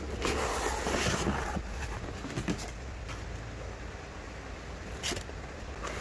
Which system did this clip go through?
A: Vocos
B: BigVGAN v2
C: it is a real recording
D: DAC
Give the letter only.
C